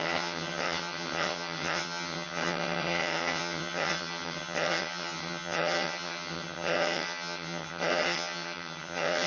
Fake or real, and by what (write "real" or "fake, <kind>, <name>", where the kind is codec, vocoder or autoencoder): fake, vocoder, HiFi-GAN